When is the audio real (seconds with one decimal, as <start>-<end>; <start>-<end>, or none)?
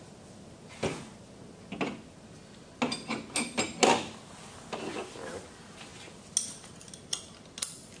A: 0.0-8.0